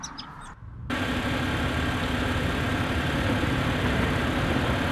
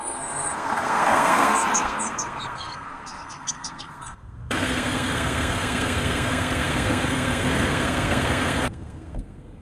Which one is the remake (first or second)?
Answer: second